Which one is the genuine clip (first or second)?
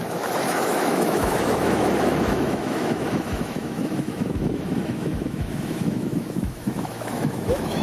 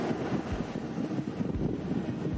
second